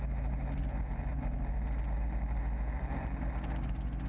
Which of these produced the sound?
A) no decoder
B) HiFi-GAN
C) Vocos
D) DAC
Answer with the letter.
A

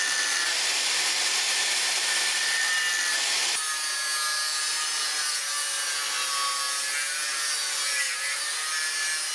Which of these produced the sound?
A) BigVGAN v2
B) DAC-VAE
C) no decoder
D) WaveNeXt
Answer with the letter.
C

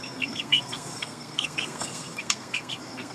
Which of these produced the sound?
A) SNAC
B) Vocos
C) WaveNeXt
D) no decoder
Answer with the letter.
A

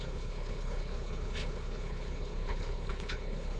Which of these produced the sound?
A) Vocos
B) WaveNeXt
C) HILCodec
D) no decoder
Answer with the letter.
C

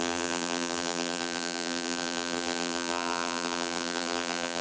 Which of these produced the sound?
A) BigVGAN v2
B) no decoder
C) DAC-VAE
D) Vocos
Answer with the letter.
A